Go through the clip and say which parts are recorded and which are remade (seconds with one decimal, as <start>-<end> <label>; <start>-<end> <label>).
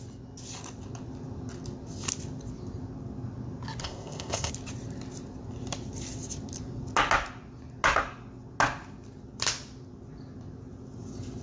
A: 0.0-3.8 recorded; 3.8-4.5 remade; 4.5-11.4 recorded